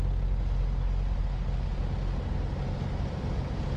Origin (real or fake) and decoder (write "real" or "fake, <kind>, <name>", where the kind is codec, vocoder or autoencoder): real